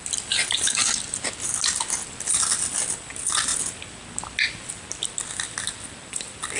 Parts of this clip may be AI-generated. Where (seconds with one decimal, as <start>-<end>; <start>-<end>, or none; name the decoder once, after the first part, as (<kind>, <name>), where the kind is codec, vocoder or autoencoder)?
0.0-0.8 (vocoder, BigVGAN v2); 2.7-3.5; 5.3-6.6